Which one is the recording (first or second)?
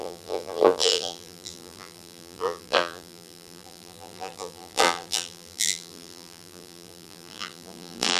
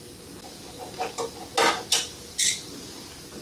second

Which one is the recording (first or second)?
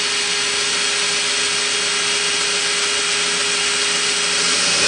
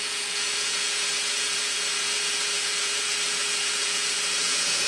first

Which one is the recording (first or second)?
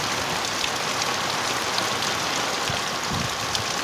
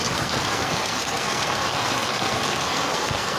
first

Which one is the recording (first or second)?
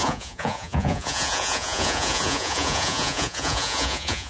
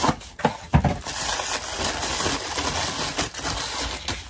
second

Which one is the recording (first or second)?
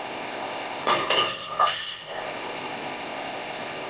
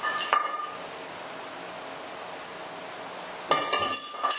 second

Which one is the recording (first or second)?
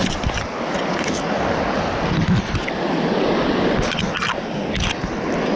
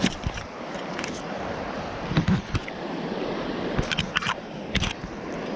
first